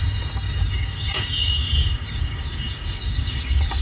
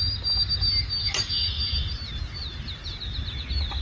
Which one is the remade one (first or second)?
first